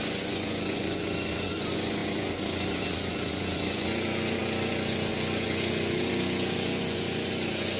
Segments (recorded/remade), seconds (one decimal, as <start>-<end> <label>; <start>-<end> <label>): 0.0-7.8 remade